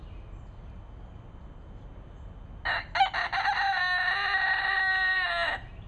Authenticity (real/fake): real